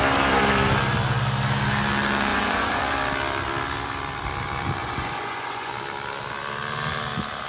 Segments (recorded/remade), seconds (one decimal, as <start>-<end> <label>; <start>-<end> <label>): 0.0-2.3 recorded; 2.3-2.8 remade; 2.8-4.8 recorded; 4.8-5.7 remade; 5.7-7.5 recorded

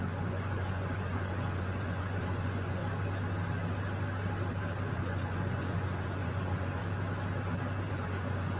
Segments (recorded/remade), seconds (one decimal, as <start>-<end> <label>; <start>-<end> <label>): 0.0-2.8 remade; 2.8-4.9 recorded; 4.9-6.8 remade; 6.8-7.9 recorded; 7.9-8.6 remade

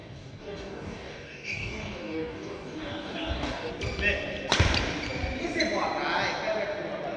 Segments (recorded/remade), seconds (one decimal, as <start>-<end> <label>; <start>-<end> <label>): 0.0-3.7 remade; 3.7-7.2 recorded

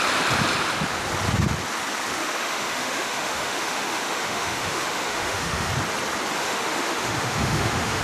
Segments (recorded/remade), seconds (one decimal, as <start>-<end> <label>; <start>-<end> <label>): 0.0-2.2 recorded; 2.2-5.7 remade; 5.7-6.4 recorded; 6.4-8.0 remade

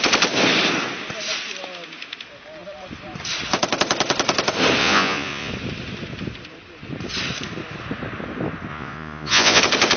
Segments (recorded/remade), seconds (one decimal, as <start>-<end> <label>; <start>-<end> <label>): 0.0-4.8 recorded; 4.8-5.5 remade; 5.5-8.7 recorded; 8.7-9.6 remade; 9.6-10.0 recorded